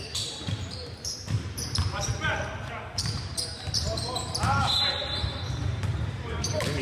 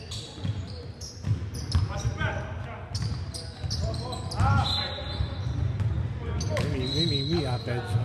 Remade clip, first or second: first